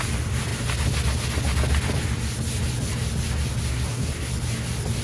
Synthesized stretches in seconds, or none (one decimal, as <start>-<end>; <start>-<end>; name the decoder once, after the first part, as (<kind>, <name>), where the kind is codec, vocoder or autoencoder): 3.7-4.3 (codec, SNAC)